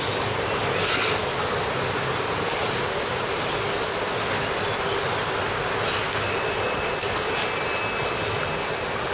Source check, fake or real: real